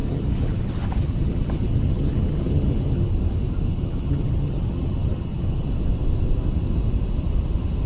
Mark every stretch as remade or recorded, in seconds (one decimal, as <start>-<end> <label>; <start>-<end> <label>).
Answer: 0.0-3.1 remade; 3.1-3.7 recorded; 3.7-5.7 remade; 5.7-7.9 recorded